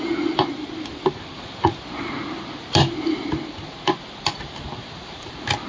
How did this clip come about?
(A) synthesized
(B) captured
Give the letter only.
B